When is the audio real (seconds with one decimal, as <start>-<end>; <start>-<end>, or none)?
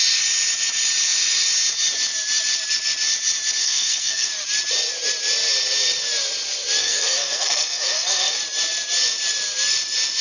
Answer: 0.0-3.6; 4.3-6.8; 8.4-10.2